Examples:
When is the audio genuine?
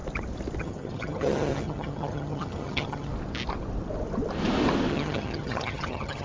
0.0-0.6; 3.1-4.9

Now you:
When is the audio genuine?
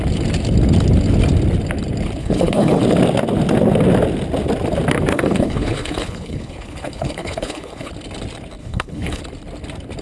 0.0-2.2; 2.8-5.1; 7.9-8.6; 9.2-10.0